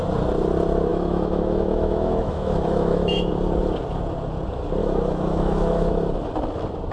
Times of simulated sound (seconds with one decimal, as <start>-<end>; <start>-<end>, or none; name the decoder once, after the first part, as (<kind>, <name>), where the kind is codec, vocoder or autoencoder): 0.9-3.3 (autoencoder, DAC-VAE); 4.8-5.9